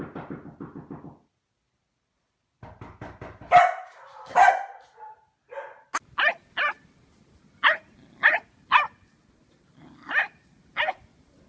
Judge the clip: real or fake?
real